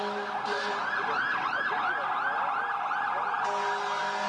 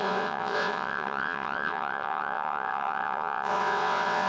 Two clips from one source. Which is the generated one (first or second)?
second